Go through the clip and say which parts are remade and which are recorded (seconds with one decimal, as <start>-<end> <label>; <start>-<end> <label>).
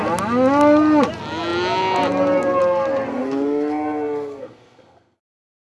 0.0-3.1 recorded; 3.1-5.2 remade; 5.2-5.7 recorded